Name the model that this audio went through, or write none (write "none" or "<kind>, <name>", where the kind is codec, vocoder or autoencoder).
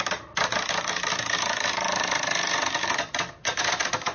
none